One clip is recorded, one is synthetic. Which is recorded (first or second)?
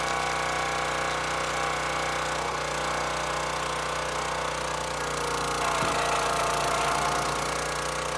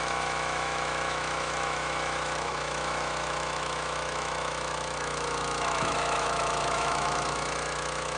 first